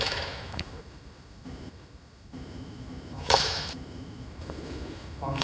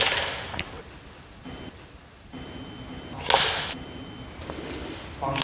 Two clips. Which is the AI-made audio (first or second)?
first